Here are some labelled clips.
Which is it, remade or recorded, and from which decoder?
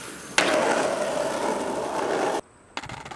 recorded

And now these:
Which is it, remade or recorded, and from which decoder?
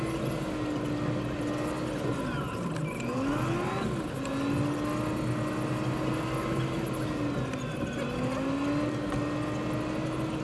recorded